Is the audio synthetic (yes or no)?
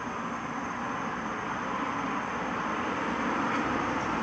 no